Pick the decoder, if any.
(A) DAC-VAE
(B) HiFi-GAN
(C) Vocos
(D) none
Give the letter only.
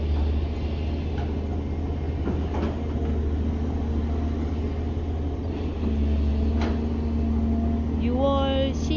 D